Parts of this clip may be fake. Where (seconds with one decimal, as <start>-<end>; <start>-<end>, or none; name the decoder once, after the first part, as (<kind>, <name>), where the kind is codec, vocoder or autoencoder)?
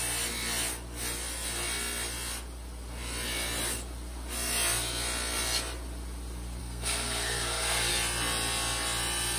6.6-7.9 (codec, SNAC)